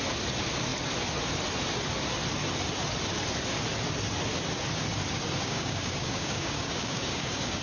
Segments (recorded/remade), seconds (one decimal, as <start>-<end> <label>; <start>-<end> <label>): 0.0-5.4 recorded; 5.4-7.6 remade